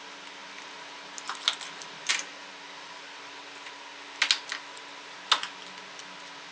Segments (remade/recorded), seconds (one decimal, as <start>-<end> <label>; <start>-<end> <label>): 0.0-6.5 recorded